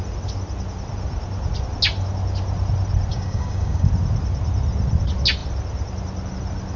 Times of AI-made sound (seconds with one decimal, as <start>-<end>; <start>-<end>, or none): 3.1-3.9